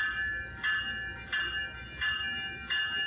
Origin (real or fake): real